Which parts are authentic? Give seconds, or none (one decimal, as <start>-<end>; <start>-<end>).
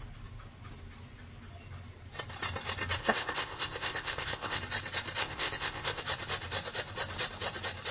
0.0-3.0; 4.6-5.2; 6.0-7.9